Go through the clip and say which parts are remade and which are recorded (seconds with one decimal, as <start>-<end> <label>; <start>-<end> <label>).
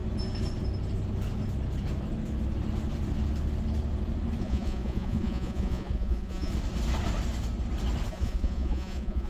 0.0-4.4 recorded; 4.4-6.5 remade; 6.5-8.1 recorded; 8.1-9.3 remade